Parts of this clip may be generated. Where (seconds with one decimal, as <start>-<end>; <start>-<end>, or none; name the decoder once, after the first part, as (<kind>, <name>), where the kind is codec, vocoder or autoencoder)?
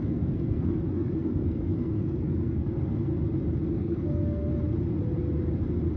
0.0-3.1 (codec, SNAC); 3.7-4.5